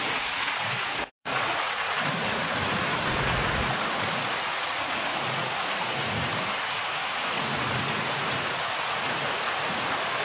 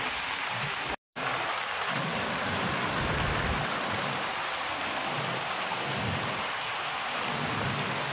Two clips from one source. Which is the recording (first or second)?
second